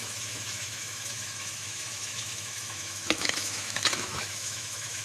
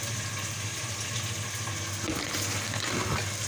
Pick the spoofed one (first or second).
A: first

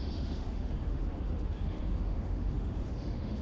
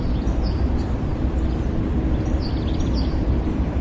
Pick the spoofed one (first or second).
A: first